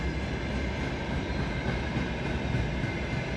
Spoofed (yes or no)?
no